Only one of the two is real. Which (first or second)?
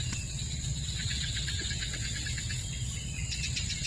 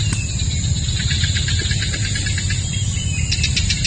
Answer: second